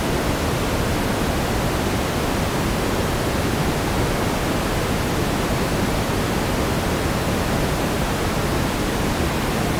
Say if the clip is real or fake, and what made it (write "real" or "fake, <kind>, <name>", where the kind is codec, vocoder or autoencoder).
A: real